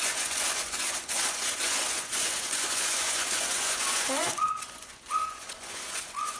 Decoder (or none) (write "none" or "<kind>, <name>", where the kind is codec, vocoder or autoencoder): vocoder, Vocos